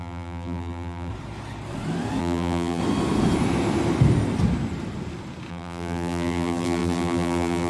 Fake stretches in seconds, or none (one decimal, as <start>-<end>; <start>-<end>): 0.0-1.1; 2.2-2.8; 5.5-7.7